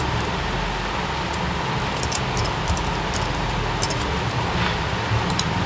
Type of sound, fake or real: real